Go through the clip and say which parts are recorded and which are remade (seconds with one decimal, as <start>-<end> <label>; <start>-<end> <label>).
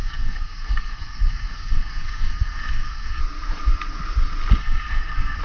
0.0-3.2 remade; 3.2-4.6 recorded; 4.6-5.4 remade